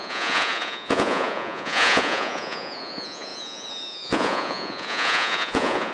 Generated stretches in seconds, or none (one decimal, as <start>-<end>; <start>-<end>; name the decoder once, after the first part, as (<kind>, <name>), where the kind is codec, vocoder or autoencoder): 0.0-5.9 (vocoder, Vocos)